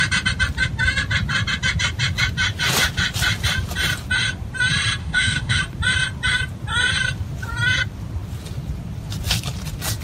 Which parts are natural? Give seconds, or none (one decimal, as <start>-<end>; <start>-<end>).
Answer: 0.0-5.0; 5.6-10.0